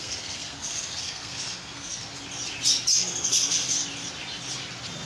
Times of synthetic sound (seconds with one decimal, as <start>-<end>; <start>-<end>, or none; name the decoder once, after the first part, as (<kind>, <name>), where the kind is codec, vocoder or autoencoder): 0.0-2.0 (codec, SNAC); 3.0-3.8